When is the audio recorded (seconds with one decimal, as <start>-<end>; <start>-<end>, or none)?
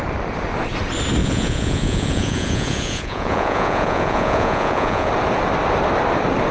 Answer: 0.0-1.2; 5.1-6.5